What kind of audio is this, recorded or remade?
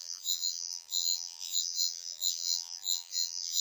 remade